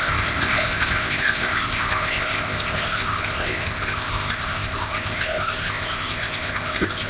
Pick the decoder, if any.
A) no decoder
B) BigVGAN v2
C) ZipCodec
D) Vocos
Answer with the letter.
C